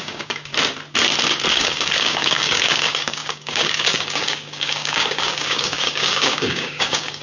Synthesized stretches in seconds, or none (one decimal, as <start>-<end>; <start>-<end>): 0.0-0.5; 1.5-7.2